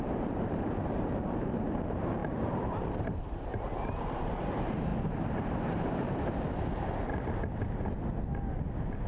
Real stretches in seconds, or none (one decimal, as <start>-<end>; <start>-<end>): 7.1-9.1